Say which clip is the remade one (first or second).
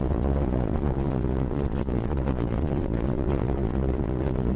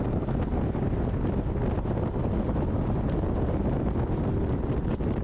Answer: first